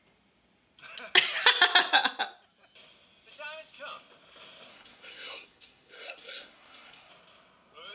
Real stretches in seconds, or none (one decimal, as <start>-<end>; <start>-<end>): 0.0-4.7; 7.1-7.9

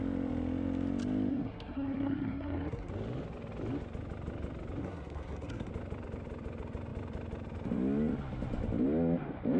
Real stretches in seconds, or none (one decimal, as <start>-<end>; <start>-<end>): 0.0-1.3; 2.9-4.8; 5.7-9.6

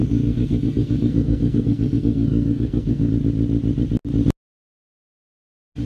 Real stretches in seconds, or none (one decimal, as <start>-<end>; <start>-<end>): 3.1-5.9

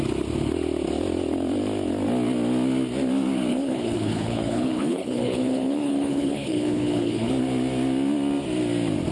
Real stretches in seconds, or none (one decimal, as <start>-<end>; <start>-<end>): 0.0-3.5; 7.3-9.1